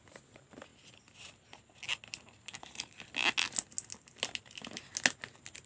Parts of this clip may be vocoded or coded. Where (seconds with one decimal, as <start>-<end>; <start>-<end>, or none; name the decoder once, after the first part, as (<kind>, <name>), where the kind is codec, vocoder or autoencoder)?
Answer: none